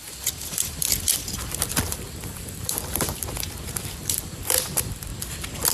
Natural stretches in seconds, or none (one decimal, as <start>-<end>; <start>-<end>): 5.1-5.7